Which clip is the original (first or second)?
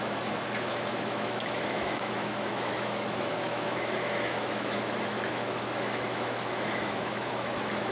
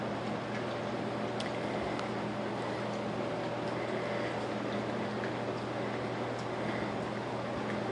second